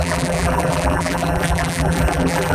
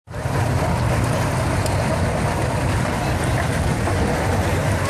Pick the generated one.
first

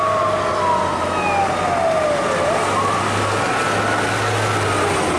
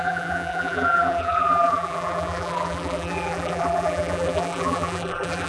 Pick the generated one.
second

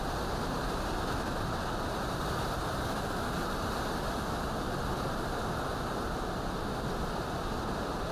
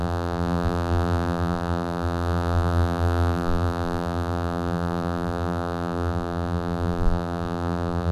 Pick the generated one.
second